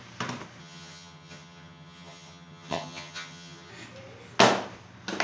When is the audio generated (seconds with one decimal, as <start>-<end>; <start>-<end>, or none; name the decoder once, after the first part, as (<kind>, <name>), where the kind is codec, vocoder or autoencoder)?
0.6-3.7 (vocoder, HiFi-GAN)